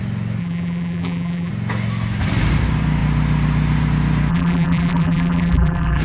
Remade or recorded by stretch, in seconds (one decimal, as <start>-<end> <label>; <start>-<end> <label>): 0.0-0.4 recorded; 0.4-1.5 remade; 1.5-4.3 recorded; 4.3-6.0 remade